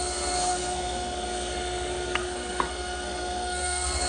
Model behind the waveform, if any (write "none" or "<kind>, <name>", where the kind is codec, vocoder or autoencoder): codec, SNAC